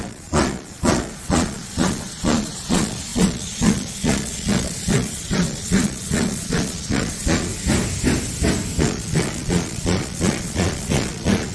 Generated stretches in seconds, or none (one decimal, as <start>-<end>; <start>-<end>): 0.0-7.5; 8.8-11.5